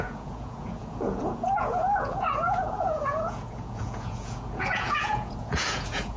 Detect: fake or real fake